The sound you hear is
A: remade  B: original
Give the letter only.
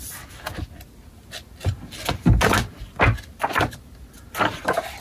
B